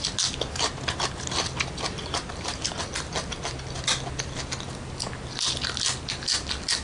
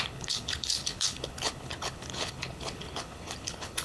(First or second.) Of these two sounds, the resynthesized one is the second